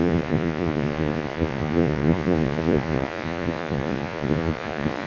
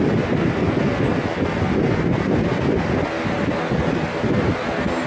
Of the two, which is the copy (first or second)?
first